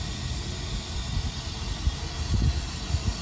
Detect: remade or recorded recorded